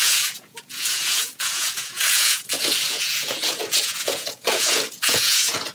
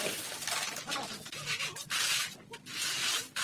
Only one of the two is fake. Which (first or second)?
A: first